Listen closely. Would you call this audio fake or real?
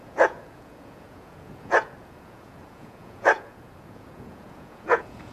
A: fake